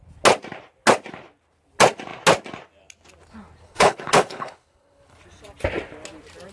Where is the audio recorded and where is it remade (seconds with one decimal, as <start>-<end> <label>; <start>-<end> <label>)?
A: 0.0-3.6 recorded; 3.6-5.2 remade; 5.2-6.5 recorded

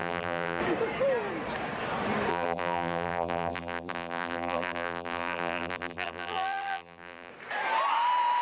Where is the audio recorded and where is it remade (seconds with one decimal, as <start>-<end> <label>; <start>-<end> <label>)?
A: 0.0-0.6 remade; 0.6-2.3 recorded; 2.3-7.3 remade; 7.3-8.4 recorded

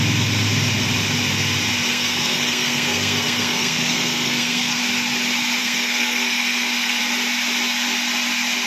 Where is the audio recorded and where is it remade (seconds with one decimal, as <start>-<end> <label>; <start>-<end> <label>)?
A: 0.0-1.9 recorded; 1.9-4.8 remade; 4.8-5.6 recorded; 5.6-7.0 remade; 7.0-8.7 recorded

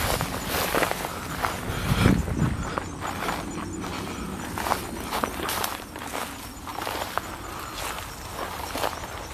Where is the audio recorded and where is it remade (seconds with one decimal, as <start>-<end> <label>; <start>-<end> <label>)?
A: 0.0-9.3 recorded

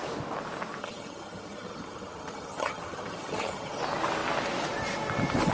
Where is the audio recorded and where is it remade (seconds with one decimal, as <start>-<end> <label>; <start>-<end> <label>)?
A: 0.0-0.8 recorded; 0.8-3.8 remade; 3.8-5.5 recorded

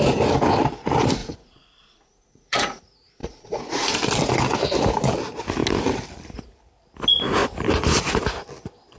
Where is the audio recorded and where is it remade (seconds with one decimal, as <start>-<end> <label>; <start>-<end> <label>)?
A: 0.0-1.2 recorded; 1.2-2.8 remade; 2.8-3.2 recorded; 3.2-4.0 remade; 4.0-9.0 recorded

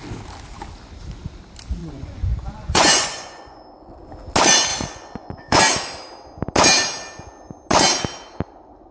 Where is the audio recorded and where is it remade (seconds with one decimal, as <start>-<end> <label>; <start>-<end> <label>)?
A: 0.0-1.8 recorded; 1.8-3.6 remade; 3.6-4.7 recorded; 4.7-5.6 remade; 5.6-8.9 recorded